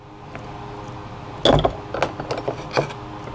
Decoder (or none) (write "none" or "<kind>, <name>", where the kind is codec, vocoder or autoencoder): none